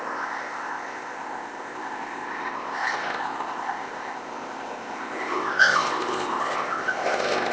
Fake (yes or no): yes